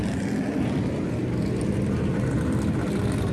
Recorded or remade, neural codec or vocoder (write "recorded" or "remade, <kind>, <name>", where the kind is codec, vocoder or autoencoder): recorded